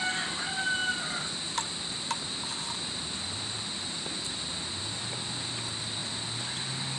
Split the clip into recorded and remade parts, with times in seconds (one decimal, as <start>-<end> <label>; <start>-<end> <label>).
0.0-7.0 recorded

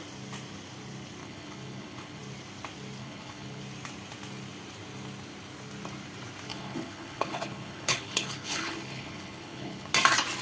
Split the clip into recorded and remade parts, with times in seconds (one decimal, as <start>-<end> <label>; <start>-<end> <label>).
0.0-1.2 recorded; 1.2-2.2 remade; 2.2-3.0 recorded; 3.0-3.6 remade; 3.6-6.5 recorded; 6.5-9.9 remade; 9.9-10.4 recorded

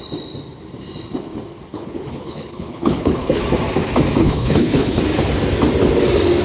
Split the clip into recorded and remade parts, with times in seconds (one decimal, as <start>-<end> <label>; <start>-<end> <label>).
0.0-1.7 recorded; 1.7-3.4 remade; 3.4-4.2 recorded; 4.2-5.0 remade; 5.0-6.4 recorded